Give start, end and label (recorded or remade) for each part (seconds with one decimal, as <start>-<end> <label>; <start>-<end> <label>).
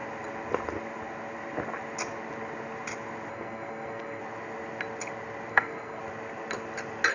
0.0-3.3 recorded; 3.3-4.2 remade; 4.2-5.5 recorded; 5.5-6.0 remade; 6.0-7.1 recorded